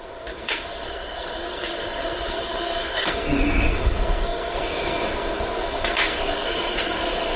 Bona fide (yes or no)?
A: no